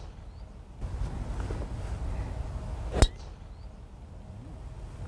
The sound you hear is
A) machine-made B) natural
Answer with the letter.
B